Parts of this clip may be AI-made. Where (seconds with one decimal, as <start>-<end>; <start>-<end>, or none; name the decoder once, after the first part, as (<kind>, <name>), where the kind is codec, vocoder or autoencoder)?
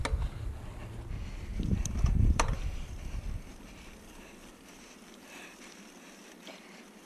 1.5-5.8 (vocoder, BigVGAN v2)